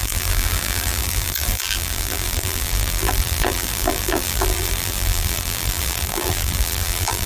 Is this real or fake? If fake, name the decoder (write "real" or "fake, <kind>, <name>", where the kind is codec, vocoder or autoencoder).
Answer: fake, vocoder, BigVGAN v2